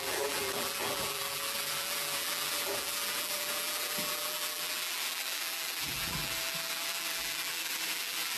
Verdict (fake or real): fake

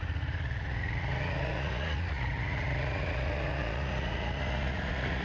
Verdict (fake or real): fake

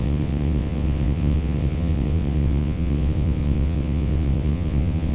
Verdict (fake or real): fake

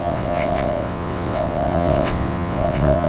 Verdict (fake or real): fake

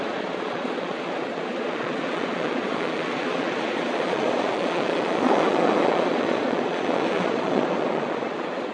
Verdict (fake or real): fake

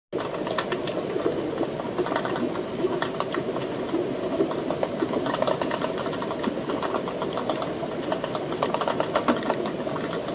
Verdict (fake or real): real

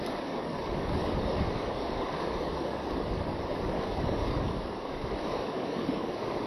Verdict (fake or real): fake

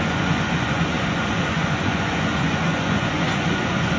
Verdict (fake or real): fake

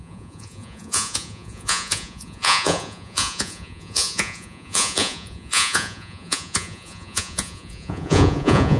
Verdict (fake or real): fake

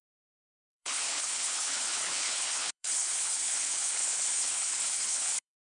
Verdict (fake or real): fake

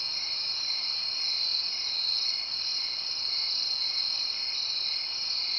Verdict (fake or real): real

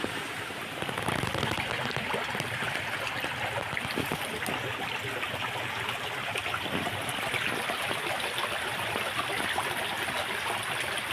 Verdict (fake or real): real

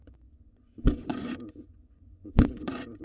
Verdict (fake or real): fake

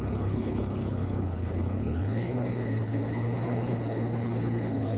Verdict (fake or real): fake